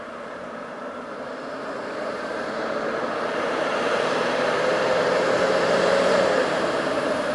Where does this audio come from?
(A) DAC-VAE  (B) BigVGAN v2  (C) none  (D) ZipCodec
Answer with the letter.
B